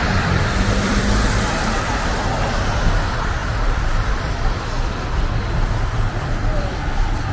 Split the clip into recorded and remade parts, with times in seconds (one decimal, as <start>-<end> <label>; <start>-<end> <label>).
0.0-1.0 remade; 1.0-2.4 recorded; 2.4-7.3 remade